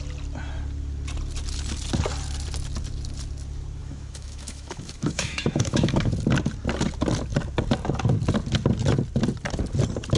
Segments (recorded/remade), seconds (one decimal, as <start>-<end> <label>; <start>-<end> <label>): 0.0-3.8 recorded; 3.8-6.1 remade; 6.1-10.2 recorded